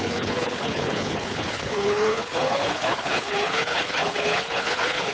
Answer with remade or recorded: remade